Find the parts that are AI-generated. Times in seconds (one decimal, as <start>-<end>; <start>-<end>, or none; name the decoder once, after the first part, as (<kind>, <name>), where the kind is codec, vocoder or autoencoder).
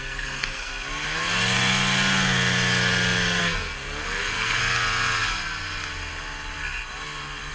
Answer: 0.0-0.7 (codec, SNAC); 3.4-4.6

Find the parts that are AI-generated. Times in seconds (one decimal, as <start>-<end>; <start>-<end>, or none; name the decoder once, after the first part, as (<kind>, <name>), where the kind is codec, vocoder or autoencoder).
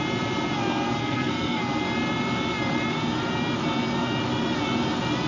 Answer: 1.0-1.6 (codec, SNAC)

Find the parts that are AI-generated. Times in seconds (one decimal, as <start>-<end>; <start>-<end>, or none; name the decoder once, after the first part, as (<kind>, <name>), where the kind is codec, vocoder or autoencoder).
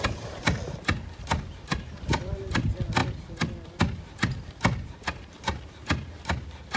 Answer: none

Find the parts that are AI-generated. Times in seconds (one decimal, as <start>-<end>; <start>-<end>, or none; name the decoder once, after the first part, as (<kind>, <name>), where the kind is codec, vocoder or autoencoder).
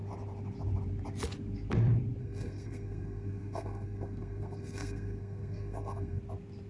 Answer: 2.2-6.2 (codec, SNAC)